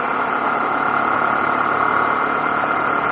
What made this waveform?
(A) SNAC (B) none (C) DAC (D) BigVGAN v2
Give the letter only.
B